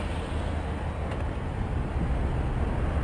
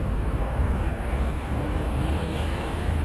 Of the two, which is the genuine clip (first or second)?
first